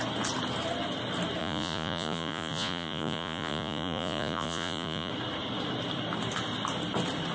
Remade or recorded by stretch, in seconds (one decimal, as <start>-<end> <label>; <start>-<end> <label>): 0.0-1.4 recorded; 1.4-5.1 remade; 5.1-7.3 recorded